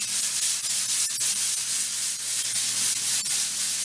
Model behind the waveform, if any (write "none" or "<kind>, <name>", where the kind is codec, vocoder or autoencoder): none